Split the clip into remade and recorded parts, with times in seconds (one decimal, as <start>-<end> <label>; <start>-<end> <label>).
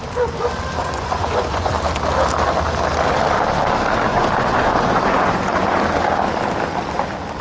0.0-0.8 recorded; 0.8-1.7 remade; 1.7-4.1 recorded; 4.1-5.8 remade; 5.8-7.4 recorded